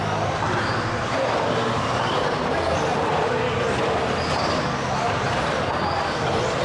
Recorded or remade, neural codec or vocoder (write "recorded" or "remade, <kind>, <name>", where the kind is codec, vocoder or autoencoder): recorded